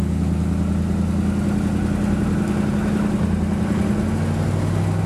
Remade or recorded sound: recorded